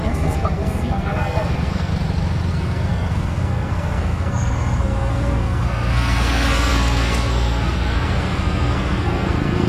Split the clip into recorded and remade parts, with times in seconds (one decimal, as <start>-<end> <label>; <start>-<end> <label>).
0.0-1.9 remade; 1.9-2.5 recorded; 2.5-9.7 remade